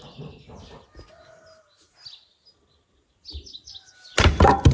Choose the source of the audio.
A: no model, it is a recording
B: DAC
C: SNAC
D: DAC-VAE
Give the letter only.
A